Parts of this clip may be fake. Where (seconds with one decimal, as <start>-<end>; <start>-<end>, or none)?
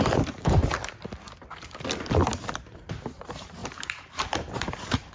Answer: 0.0-0.6; 2.5-5.1